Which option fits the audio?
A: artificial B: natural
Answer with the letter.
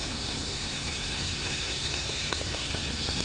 A